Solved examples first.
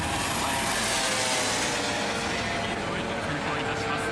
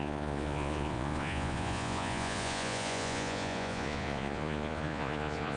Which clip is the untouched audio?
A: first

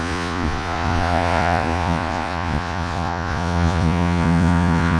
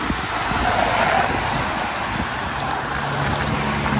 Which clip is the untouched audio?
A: second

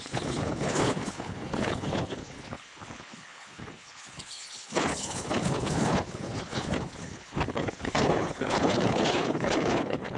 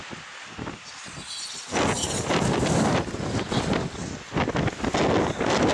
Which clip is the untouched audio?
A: second